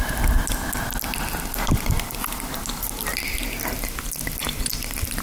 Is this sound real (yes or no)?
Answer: yes